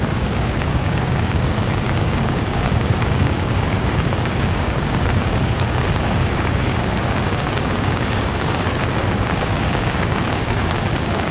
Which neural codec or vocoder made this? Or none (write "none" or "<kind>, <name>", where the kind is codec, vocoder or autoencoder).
codec, DAC